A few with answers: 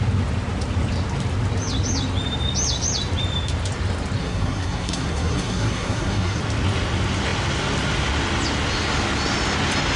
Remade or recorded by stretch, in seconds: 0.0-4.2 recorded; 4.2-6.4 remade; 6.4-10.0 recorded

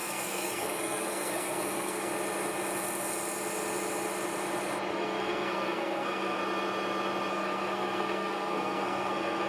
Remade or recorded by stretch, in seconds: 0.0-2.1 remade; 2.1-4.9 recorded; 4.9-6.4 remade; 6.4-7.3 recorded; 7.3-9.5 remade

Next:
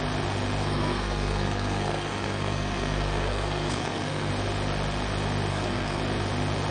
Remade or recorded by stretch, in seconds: 0.0-0.6 recorded; 0.6-4.3 remade; 4.3-5.5 recorded; 5.5-6.0 remade; 6.0-6.7 recorded